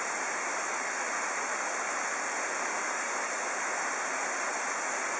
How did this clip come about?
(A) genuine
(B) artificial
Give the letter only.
A